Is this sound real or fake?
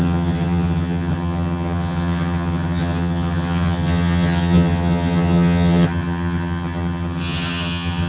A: fake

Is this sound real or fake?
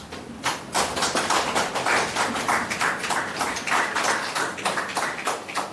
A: real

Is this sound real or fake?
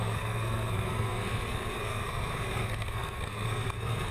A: fake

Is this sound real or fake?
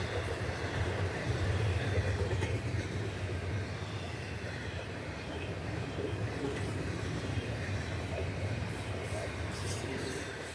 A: fake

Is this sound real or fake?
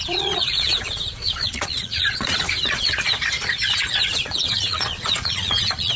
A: fake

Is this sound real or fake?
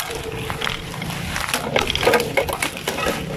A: real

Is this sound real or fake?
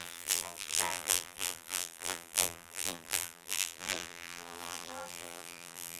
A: fake